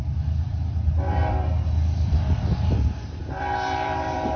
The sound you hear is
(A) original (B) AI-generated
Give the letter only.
B